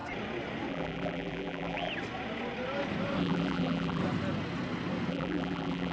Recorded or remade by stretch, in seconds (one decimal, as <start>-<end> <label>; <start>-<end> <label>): 0.0-0.7 recorded; 0.7-1.9 remade; 1.9-3.2 recorded; 3.2-4.0 remade; 4.0-5.1 recorded; 5.1-5.9 remade